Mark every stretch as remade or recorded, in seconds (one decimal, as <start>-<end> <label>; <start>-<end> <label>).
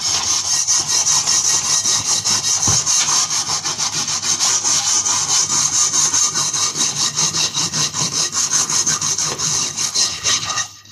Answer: 0.0-1.9 recorded; 1.9-2.4 remade; 2.4-6.7 recorded; 6.7-10.9 remade